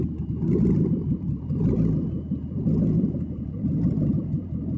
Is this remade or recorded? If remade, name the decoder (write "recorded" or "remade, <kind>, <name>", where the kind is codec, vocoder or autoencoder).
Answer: remade, vocoder, BigVGAN v2